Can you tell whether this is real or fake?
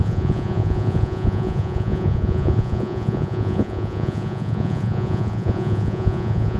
fake